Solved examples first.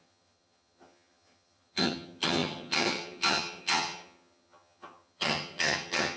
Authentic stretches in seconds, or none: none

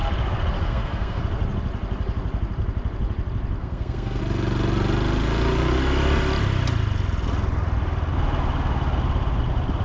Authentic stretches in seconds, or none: 0.0-0.6; 1.2-3.6; 4.2-9.8